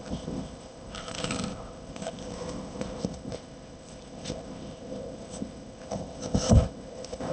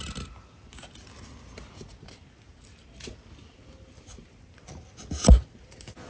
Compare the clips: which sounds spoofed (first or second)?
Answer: first